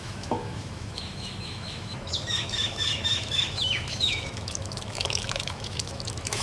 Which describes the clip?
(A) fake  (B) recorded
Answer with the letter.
A